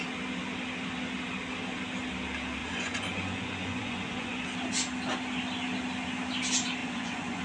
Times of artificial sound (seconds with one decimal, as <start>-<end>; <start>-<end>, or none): 2.6-4.4; 6.8-7.4